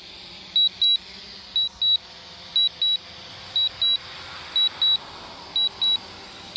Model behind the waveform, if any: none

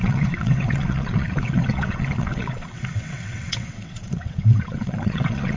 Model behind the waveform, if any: vocoder, WaveNeXt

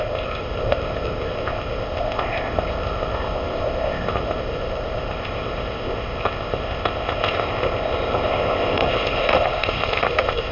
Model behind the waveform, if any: codec, ZipCodec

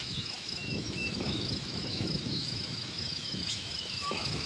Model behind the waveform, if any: autoencoder, DAC-VAE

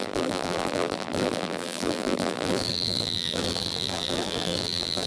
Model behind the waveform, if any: vocoder, BigVGAN v2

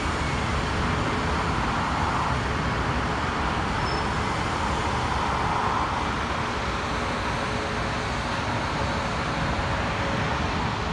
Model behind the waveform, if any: none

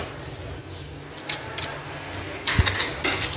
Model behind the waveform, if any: none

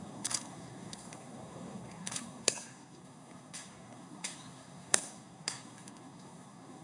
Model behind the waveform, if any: codec, SNAC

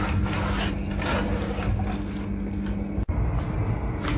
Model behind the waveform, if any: none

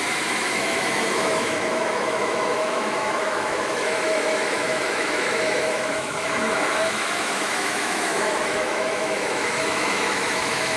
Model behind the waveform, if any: autoencoder, DAC-VAE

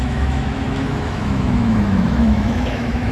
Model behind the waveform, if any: autoencoder, DAC-VAE